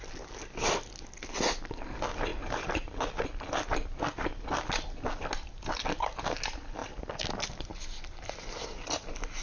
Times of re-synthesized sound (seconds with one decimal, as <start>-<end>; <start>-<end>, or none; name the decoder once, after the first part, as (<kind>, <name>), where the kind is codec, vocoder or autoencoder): none